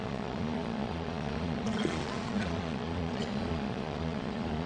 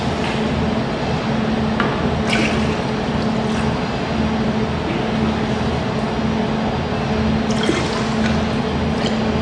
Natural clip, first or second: second